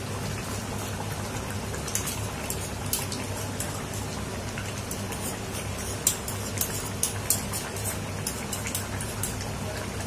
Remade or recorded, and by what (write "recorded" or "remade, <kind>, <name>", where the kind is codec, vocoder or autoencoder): recorded